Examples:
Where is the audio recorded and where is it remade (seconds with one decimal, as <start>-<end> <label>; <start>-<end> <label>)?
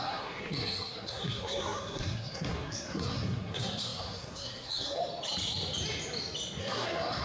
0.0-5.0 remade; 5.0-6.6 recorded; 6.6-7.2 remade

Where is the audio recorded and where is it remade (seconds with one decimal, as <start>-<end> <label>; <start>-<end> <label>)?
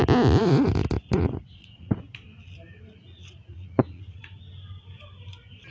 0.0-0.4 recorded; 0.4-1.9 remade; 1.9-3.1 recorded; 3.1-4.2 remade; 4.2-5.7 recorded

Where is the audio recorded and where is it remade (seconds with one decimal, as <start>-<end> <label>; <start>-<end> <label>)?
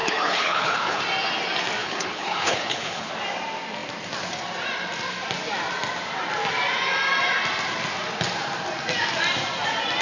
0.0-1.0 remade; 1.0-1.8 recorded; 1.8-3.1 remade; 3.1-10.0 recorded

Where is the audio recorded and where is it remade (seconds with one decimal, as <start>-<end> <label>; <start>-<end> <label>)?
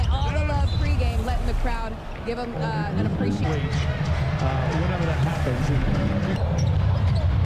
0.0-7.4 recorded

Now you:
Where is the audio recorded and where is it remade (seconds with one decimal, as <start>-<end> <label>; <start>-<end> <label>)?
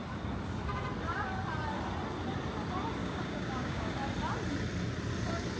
0.0-3.0 recorded; 3.0-3.9 remade; 3.9-5.6 recorded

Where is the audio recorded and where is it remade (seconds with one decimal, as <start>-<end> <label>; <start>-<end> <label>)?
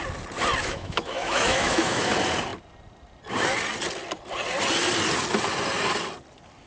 0.0-0.6 recorded; 0.6-2.1 remade; 2.1-6.7 recorded